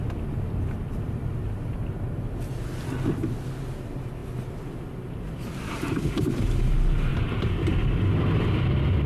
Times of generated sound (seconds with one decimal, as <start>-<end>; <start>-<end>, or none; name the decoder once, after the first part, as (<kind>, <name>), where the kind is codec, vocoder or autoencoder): 7.1-7.7 (vocoder, BigVGAN v2)